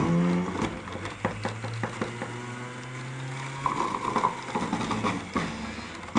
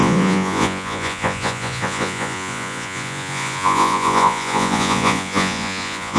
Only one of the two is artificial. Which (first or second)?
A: second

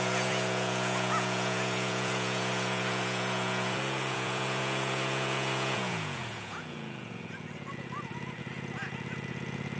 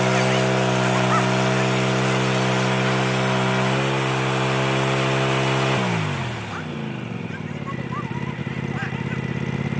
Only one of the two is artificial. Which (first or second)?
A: first